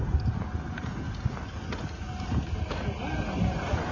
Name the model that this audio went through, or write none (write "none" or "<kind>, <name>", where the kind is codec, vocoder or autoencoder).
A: none